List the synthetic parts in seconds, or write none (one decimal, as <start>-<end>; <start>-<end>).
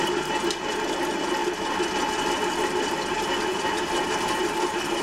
3.5-5.0